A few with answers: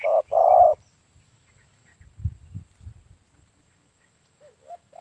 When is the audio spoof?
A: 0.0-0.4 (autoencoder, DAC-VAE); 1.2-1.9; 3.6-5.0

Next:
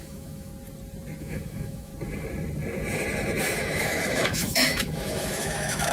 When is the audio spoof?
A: 0.0-0.5 (autoencoder, DAC-VAE); 1.2-1.9; 3.4-5.9